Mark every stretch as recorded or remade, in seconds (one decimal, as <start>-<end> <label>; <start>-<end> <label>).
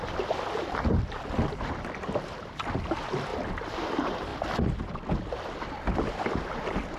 0.0-7.0 recorded